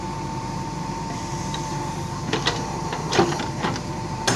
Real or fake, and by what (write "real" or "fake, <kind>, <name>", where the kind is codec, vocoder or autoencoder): fake, vocoder, BigVGAN v2